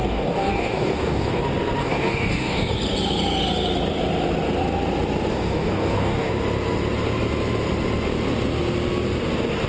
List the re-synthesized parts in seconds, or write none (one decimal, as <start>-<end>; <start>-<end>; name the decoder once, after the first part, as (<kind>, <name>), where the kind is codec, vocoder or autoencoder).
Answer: 0.0-1.4 (codec, DAC); 1.8-2.6; 5.3-6.3